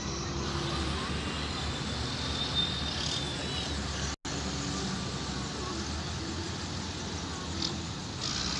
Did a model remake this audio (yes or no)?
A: no